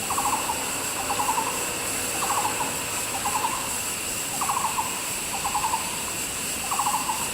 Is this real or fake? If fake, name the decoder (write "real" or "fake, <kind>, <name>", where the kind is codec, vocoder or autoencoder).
real